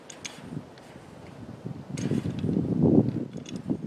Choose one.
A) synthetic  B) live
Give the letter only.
B